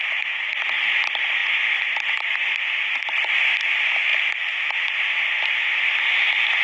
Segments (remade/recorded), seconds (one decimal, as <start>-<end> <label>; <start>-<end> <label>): 0.0-6.6 recorded